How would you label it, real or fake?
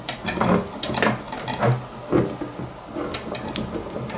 real